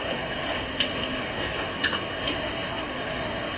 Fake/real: fake